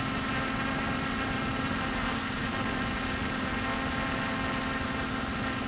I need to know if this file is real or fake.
real